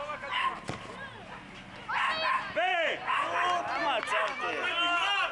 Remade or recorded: recorded